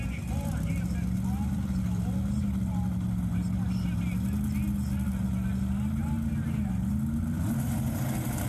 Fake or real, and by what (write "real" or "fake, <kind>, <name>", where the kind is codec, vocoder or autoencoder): real